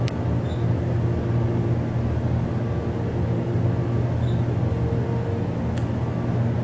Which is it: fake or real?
real